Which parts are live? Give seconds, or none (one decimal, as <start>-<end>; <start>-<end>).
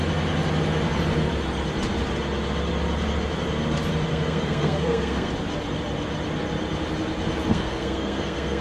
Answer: 0.0-4.1; 5.3-7.5